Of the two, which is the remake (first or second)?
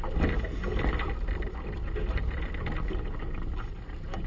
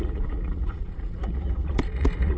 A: second